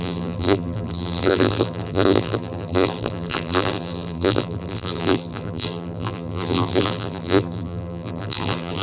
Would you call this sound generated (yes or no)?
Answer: yes